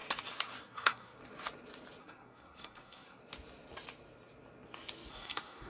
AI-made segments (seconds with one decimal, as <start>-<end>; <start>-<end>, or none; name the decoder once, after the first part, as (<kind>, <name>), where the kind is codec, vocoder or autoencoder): 0.6-1.2 (codec, SNAC); 2.0-3.2; 5.1-5.7